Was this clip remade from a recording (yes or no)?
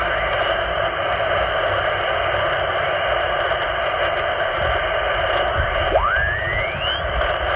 no